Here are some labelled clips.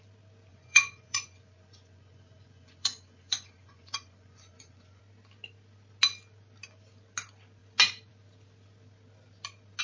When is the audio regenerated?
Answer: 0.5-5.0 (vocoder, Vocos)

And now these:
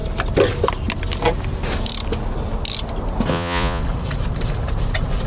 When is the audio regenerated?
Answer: 3.3-3.8 (vocoder, Vocos)

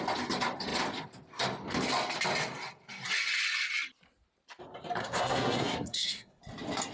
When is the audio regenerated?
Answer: 5.0-6.4 (codec, SNAC)

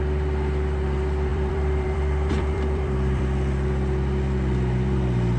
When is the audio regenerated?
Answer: 1.3-3.2 (vocoder, BigVGAN v2)

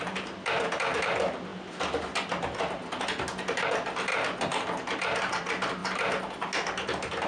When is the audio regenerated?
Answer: none

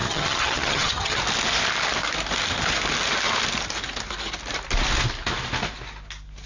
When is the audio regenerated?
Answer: 0.0-1.2 (vocoder, HiFi-GAN)

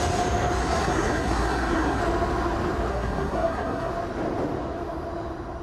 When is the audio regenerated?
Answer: 0.6-2.0 (codec, SNAC); 2.9-3.9

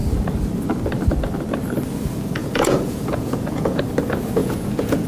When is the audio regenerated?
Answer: 2.4-3.8 (vocoder, Vocos); 4.4-5.1